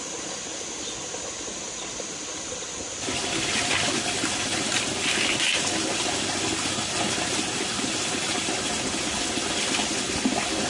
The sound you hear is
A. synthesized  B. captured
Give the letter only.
B